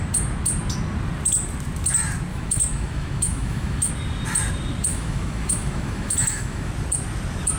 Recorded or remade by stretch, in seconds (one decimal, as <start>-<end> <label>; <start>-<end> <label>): 0.0-2.3 recorded; 2.3-3.9 remade; 3.9-4.9 recorded; 4.9-6.7 remade; 6.7-7.6 recorded